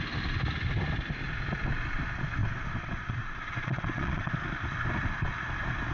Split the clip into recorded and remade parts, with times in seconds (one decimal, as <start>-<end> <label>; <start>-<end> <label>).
0.0-2.4 recorded; 2.4-4.3 remade; 4.3-5.9 recorded